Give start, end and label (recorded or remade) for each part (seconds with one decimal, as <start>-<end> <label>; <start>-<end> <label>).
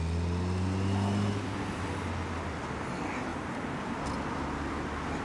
0.0-5.2 recorded